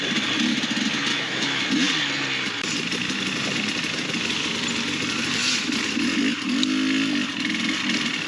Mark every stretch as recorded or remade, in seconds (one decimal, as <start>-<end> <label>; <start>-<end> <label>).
0.0-1.1 recorded; 1.1-1.6 remade; 1.6-8.3 recorded